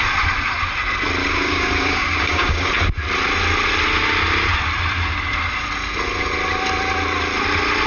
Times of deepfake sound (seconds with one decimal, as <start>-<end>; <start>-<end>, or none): 1.2-2.7